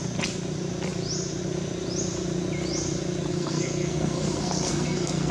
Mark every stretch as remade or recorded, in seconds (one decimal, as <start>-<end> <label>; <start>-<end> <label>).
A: 0.0-3.3 recorded; 3.3-5.3 remade